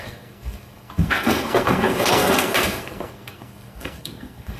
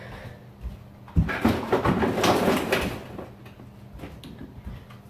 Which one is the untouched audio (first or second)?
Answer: second